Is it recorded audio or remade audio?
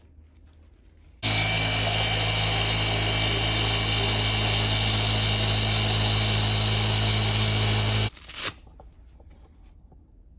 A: recorded